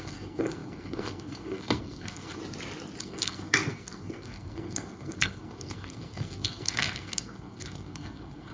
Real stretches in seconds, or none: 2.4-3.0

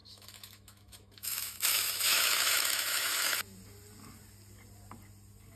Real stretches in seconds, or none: 3.4-5.6

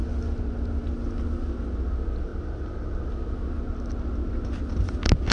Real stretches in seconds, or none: 0.0-5.3

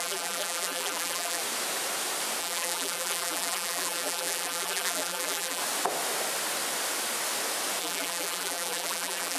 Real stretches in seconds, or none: 1.4-2.4; 5.6-7.8

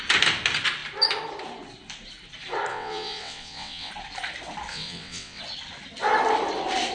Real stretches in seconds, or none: 0.0-2.7; 3.9-4.7; 5.4-6.9

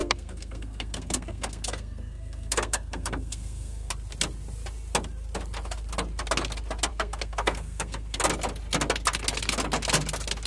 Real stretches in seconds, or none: 3.9-6.9; 8.2-10.5

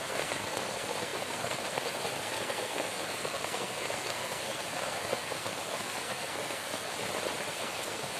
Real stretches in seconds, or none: 6.9-7.5

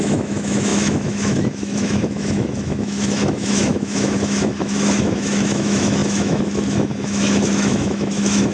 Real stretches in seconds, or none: none